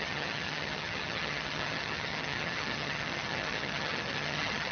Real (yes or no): no